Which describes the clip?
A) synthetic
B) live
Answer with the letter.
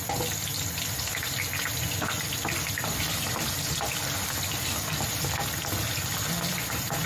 B